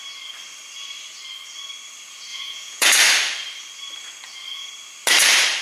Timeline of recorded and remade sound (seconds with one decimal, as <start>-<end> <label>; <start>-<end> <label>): 0.0-2.3 recorded; 2.3-2.9 remade; 2.9-5.6 recorded